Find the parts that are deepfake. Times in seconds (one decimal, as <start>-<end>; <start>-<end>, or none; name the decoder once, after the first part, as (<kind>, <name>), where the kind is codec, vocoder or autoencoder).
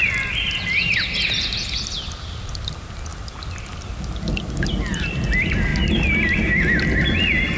none